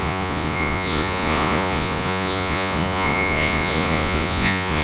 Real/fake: fake